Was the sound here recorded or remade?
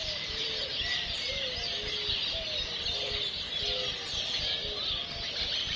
recorded